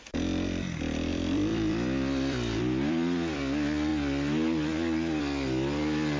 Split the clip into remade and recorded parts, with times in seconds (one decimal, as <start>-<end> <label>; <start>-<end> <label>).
0.0-1.1 recorded; 1.1-3.4 remade; 3.4-6.2 recorded